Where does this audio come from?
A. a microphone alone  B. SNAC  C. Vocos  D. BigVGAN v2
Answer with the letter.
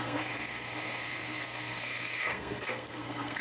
B